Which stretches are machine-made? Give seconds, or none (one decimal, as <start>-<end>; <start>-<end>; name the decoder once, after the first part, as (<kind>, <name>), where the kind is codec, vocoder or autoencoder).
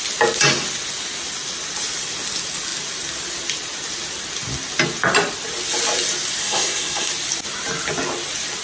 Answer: 6.4-7.1 (codec, SNAC)